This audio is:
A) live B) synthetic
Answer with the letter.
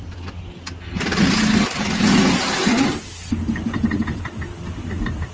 A